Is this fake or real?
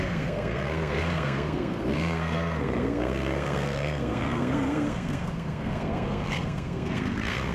fake